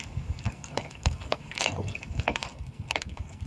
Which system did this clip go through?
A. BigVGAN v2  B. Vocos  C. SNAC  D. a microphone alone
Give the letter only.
C